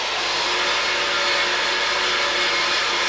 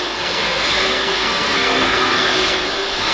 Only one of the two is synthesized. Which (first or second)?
second